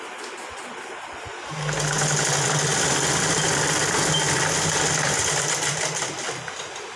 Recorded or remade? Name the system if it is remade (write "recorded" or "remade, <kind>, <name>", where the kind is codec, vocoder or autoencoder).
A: recorded